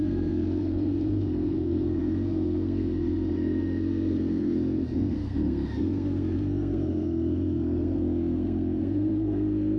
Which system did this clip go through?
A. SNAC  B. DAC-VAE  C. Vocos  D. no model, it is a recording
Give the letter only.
A